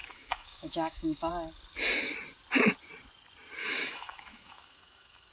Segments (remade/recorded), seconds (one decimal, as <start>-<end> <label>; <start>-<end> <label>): 0.0-1.3 remade; 1.3-3.6 recorded; 3.6-5.3 remade